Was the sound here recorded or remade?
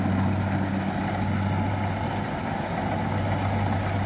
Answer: recorded